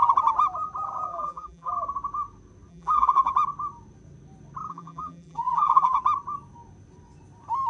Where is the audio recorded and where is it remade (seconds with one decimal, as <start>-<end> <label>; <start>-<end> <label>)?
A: 0.0-1.1 recorded; 1.1-1.7 remade; 1.7-2.7 recorded; 2.7-3.3 remade; 3.3-4.7 recorded; 4.7-6.0 remade; 6.0-7.7 recorded